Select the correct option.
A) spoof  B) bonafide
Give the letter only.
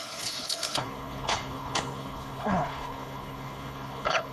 A